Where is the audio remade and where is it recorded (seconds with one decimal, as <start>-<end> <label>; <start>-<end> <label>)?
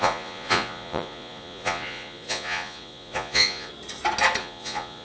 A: 0.0-3.7 remade; 3.7-4.4 recorded; 4.4-5.0 remade